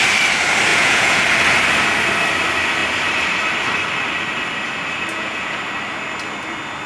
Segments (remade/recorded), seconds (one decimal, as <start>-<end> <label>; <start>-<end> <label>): 0.0-0.7 recorded; 0.7-1.2 remade; 1.2-5.1 recorded; 5.1-5.6 remade; 5.6-6.9 recorded